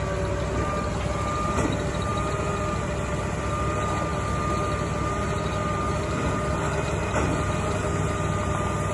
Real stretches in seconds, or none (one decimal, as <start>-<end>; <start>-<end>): 0.0-8.9